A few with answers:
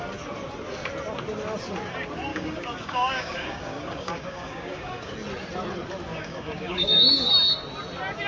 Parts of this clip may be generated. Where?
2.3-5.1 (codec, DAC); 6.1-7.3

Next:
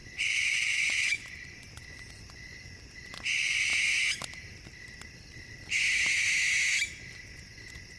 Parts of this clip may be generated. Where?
0.0-3.7 (vocoder, Vocos); 7.0-8.0

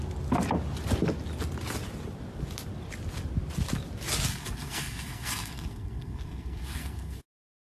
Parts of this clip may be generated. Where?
4.3-7.2 (codec, SNAC)